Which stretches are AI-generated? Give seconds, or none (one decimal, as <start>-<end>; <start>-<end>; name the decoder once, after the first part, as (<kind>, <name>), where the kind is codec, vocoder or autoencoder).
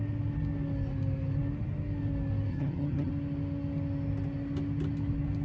2.5-3.1 (vocoder, HiFi-GAN)